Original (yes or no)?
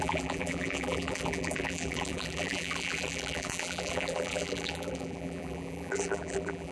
no